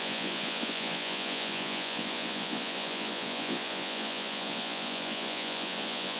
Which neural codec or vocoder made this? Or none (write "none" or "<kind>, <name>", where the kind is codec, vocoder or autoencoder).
vocoder, Vocos